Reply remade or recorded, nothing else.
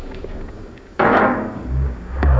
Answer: remade